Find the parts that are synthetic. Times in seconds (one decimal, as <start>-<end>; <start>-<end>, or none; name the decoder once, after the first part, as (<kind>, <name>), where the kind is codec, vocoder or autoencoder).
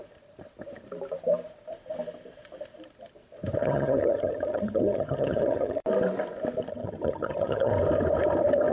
3.6-5.8 (vocoder, HiFi-GAN); 6.7-7.7